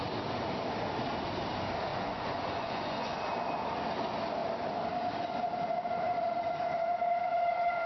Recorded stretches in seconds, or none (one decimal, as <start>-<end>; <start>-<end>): 0.0-1.9; 3.2-7.9